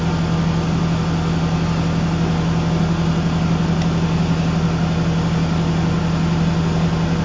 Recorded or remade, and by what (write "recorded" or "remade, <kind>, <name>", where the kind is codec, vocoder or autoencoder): recorded